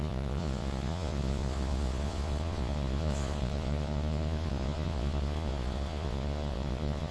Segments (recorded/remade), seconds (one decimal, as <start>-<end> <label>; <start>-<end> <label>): 0.0-7.1 remade